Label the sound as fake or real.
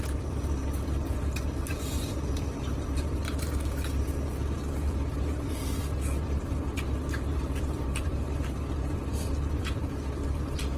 fake